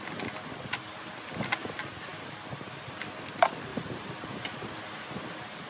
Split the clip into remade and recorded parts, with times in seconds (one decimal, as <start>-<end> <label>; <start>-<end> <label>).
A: 0.0-5.7 recorded